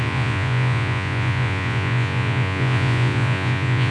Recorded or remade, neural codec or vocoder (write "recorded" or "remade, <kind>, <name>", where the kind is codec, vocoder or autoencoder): remade, vocoder, Vocos